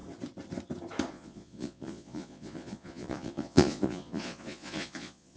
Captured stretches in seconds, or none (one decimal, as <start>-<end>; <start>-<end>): 0.0-1.1